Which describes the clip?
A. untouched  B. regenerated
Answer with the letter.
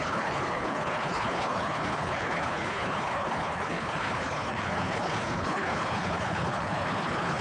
B